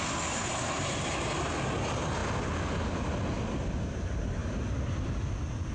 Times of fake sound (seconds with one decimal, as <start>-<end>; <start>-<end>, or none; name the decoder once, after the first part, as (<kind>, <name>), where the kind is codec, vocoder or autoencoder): none